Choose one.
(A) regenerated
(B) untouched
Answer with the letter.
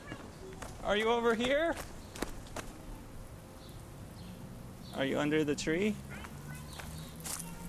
B